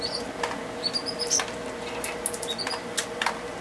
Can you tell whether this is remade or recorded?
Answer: recorded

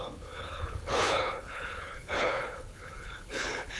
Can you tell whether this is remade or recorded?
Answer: remade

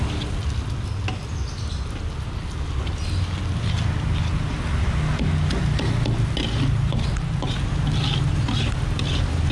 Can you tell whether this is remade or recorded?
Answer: recorded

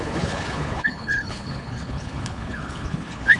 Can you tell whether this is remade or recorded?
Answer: remade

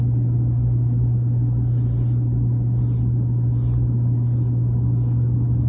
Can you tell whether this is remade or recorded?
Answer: recorded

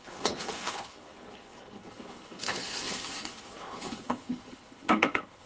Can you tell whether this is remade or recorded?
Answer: remade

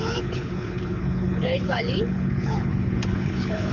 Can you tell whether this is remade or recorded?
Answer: remade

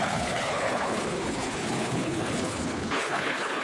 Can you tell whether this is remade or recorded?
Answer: remade